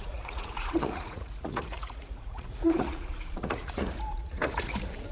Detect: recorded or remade remade